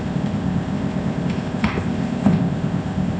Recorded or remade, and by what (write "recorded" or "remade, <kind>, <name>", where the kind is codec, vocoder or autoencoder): remade, codec, ZipCodec